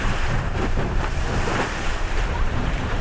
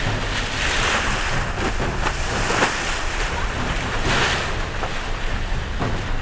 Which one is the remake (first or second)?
first